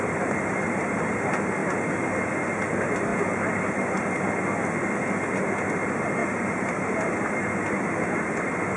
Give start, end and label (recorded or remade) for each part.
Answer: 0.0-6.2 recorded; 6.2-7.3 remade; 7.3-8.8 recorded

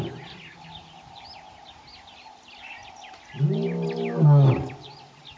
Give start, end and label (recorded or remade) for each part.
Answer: 0.0-5.4 recorded

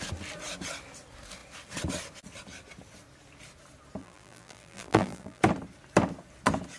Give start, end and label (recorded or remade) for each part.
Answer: 0.0-4.0 recorded; 4.0-5.4 remade; 5.4-6.8 recorded

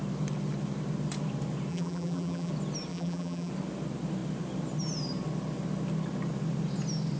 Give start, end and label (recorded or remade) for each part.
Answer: 0.0-1.7 recorded; 1.7-2.5 remade; 2.5-2.9 recorded; 2.9-3.5 remade; 3.5-7.2 recorded

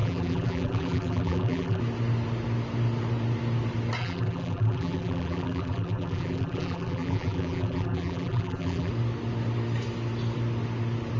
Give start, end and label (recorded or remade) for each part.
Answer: 0.0-1.8 remade; 1.8-4.0 recorded; 4.0-8.9 remade; 8.9-11.2 recorded